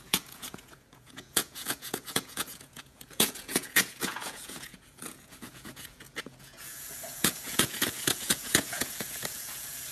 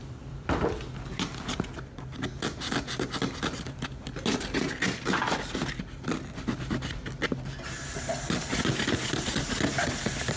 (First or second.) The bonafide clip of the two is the second